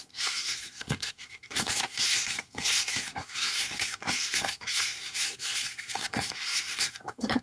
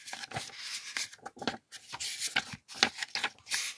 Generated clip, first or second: first